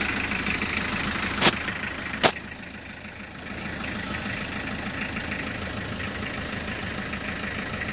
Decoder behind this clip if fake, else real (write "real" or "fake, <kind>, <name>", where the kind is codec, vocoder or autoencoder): real